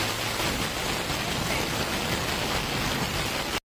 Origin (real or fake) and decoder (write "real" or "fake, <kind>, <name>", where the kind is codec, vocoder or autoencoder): real